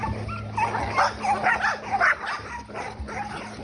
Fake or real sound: real